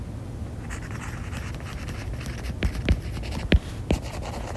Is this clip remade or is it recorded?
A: recorded